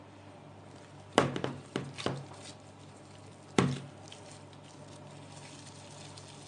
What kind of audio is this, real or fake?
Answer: fake